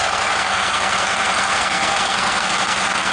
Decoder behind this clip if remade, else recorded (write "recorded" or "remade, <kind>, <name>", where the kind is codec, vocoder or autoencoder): remade, codec, SNAC